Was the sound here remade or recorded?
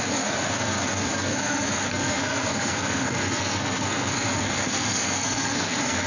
remade